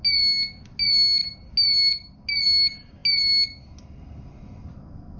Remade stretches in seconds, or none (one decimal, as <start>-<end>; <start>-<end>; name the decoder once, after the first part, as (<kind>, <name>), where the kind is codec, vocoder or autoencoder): none